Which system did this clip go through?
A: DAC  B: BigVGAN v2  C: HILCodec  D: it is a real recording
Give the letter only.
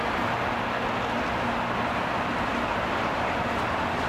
D